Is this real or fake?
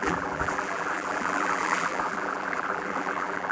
fake